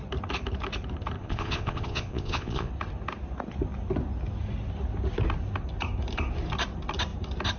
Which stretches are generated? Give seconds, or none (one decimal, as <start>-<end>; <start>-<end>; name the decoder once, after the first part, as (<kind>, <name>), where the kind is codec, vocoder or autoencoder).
1.2-2.7 (vocoder, Vocos)